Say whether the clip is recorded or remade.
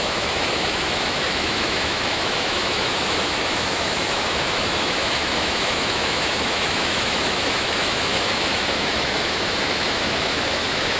remade